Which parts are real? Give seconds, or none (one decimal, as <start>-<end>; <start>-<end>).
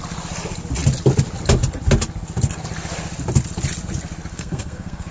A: 0.0-4.3